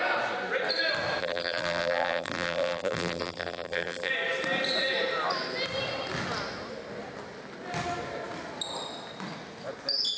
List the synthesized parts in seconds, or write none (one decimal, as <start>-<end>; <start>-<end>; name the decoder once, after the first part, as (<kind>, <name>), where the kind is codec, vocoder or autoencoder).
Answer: 1.2-4.1 (vocoder, BigVGAN v2)